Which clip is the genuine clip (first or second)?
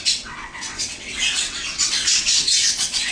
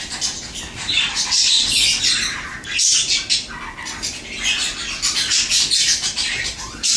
second